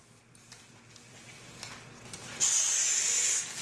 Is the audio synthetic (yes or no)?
no